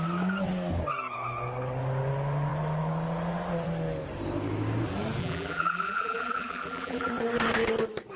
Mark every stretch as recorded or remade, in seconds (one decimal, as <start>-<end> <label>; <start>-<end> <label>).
0.0-5.2 recorded; 5.2-7.1 remade; 7.1-8.2 recorded